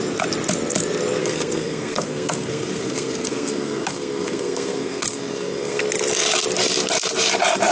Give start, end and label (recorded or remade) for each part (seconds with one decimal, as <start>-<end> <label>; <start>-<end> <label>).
0.0-1.2 recorded; 1.2-5.8 remade; 5.8-7.7 recorded